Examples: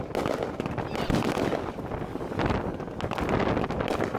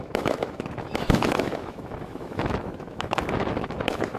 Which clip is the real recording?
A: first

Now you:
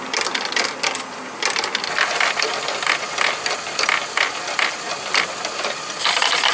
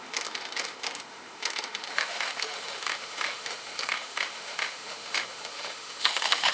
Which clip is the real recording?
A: first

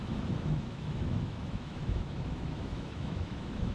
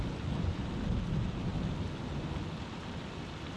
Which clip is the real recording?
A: second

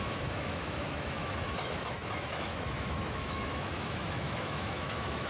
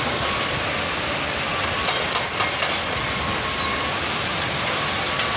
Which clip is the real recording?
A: second